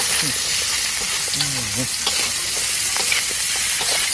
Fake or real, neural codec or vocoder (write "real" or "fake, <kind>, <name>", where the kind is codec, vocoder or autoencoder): real